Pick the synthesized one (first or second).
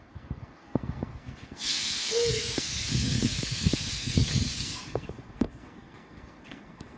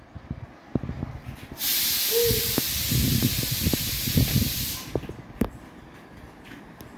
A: first